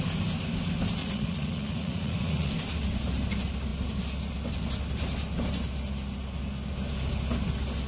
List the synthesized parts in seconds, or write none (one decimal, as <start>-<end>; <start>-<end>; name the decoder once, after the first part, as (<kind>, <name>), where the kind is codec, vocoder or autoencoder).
1.0-2.5 (vocoder, Vocos)